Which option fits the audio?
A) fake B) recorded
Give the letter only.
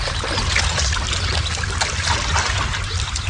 B